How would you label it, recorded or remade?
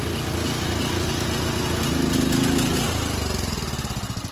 recorded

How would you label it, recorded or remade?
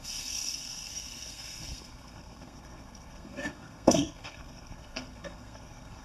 remade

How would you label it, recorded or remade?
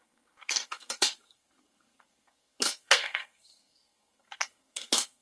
remade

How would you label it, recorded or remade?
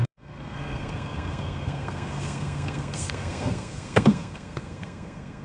remade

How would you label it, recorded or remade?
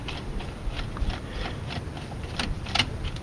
recorded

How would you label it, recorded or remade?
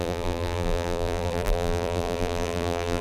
remade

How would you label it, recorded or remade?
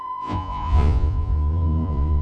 remade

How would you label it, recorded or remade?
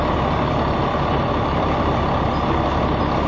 recorded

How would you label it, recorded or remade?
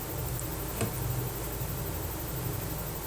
recorded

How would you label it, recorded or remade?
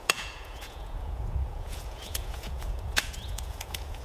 remade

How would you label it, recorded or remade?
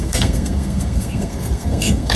remade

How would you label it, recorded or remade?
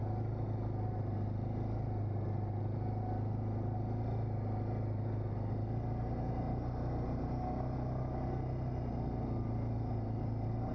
recorded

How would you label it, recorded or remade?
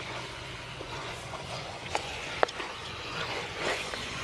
remade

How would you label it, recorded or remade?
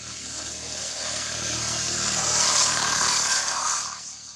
remade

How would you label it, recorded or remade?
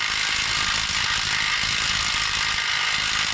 recorded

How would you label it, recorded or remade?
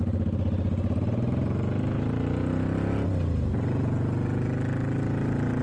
recorded